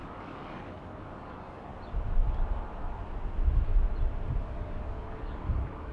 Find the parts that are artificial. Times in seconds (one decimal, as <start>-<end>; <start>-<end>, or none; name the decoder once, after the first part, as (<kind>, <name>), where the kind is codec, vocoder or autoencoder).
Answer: 0.0-1.7 (codec, DAC); 4.4-5.9